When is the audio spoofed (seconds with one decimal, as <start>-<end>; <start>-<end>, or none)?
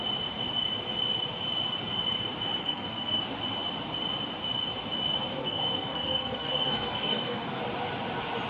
2.6-3.2; 5.4-7.6